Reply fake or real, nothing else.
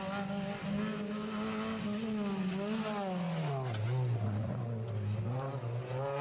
real